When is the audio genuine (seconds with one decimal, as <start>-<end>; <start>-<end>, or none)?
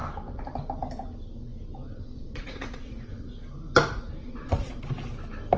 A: 0.0-1.9; 3.3-4.2; 4.8-5.6